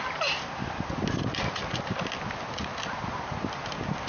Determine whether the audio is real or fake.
real